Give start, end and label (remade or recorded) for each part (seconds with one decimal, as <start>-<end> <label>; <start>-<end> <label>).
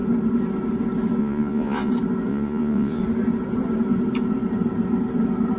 0.0-1.2 recorded; 1.2-1.9 remade; 1.9-2.3 recorded; 2.3-3.0 remade; 3.0-5.6 recorded